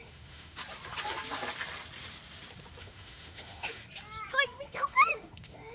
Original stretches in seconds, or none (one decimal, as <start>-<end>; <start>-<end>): 0.6-2.8; 3.8-4.3